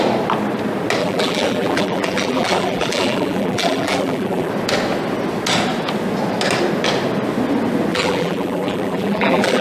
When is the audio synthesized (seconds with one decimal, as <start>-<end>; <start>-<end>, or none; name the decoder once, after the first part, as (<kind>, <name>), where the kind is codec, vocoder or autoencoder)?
1.0-4.5 (vocoder, BigVGAN v2); 7.9-9.6